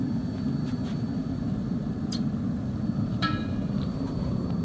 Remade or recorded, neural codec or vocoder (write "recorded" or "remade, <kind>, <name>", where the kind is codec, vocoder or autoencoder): remade, vocoder, BigVGAN v2